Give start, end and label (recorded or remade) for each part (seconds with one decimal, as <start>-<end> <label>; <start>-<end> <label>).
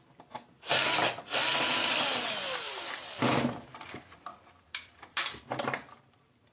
0.0-6.5 recorded